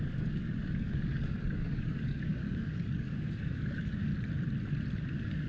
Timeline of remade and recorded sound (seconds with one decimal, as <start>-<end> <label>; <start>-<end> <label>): 0.0-4.1 remade; 4.1-5.1 recorded; 5.1-5.5 remade